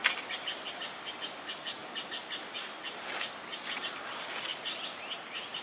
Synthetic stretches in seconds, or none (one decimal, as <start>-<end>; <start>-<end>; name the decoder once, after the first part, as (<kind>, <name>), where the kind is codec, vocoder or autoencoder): none